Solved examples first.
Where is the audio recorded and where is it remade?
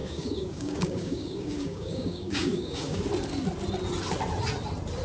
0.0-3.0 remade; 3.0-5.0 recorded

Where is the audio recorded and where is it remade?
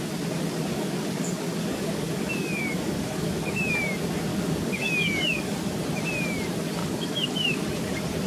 0.0-0.7 recorded; 0.7-3.7 remade; 3.7-4.3 recorded; 4.3-5.8 remade; 5.8-6.8 recorded; 6.8-7.6 remade; 7.6-8.3 recorded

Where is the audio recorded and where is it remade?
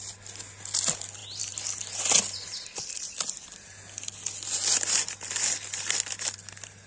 0.0-6.9 recorded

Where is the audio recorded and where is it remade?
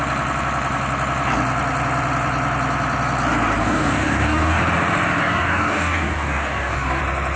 0.0-3.6 recorded; 3.6-4.6 remade; 4.6-5.2 recorded; 5.2-7.0 remade; 7.0-7.4 recorded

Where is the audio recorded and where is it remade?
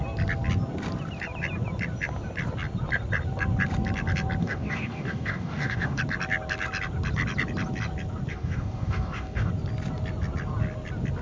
0.0-4.4 recorded; 4.4-6.0 remade; 6.0-8.3 recorded; 8.3-9.5 remade; 9.5-11.2 recorded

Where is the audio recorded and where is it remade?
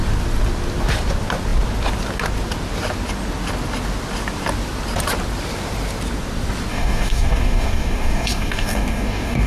0.0-6.7 recorded; 6.7-9.5 remade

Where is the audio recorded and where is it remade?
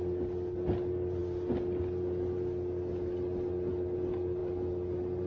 0.0-5.3 recorded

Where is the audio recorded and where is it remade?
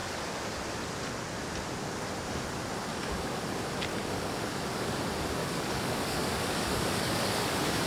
0.0-2.9 recorded; 2.9-3.4 remade; 3.4-3.9 recorded; 3.9-5.0 remade; 5.0-5.4 recorded; 5.4-7.9 remade